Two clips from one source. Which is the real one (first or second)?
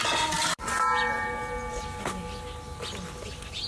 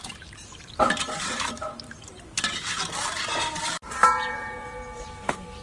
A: first